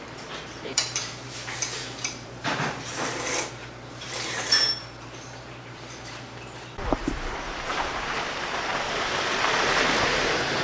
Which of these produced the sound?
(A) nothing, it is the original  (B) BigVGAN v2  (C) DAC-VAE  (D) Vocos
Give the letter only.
B